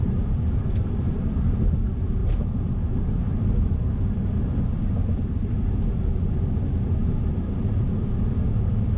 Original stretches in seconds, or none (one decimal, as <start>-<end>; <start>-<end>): 0.0-9.0